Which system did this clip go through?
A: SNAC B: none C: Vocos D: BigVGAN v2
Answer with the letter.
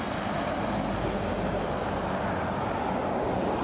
B